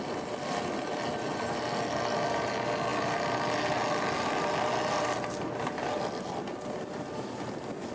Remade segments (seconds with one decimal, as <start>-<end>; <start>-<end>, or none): none